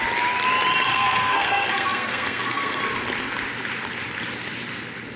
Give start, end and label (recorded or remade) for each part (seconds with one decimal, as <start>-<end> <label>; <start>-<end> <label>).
0.0-0.9 recorded; 0.9-2.8 remade; 2.8-5.2 recorded